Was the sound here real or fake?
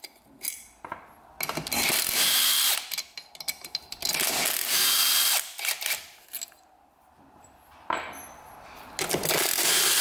real